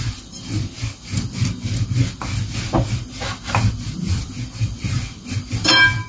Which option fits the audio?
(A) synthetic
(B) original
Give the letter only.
B